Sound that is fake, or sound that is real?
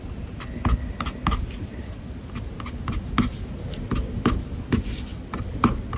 real